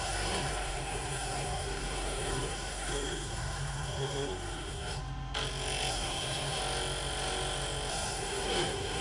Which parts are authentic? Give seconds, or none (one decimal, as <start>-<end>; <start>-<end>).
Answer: 5.0-5.9; 6.6-7.9